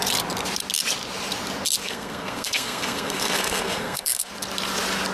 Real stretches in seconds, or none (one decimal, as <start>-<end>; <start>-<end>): 0.0-1.8; 4.3-5.1